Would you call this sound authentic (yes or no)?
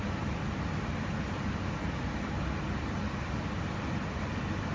yes